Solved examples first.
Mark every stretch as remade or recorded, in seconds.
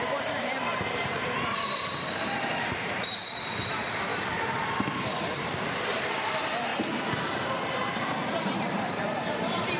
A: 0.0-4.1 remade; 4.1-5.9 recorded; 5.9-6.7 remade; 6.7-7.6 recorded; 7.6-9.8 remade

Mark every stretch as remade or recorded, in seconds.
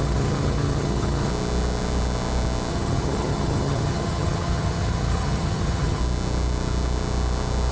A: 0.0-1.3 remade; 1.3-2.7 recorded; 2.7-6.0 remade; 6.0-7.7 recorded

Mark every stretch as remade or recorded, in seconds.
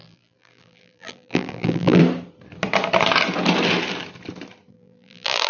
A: 0.0-2.0 remade; 2.0-4.7 recorded; 4.7-5.5 remade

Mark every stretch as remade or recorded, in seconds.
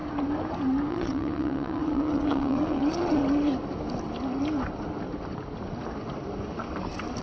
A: 0.0-0.9 recorded; 0.9-3.2 remade; 3.2-7.2 recorded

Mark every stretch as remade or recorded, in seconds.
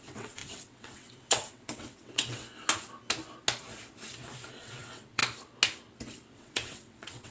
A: 0.0-2.4 remade; 2.4-4.5 recorded; 4.5-5.2 remade; 5.2-6.3 recorded; 6.3-7.3 remade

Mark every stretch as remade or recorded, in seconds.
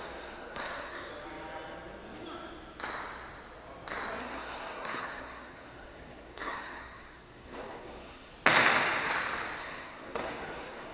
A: 0.0-1.1 remade; 1.1-4.2 recorded; 4.2-8.3 remade; 8.3-9.6 recorded; 9.6-10.9 remade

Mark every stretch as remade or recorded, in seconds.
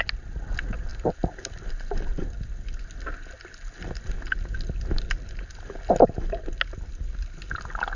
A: 0.0-8.0 recorded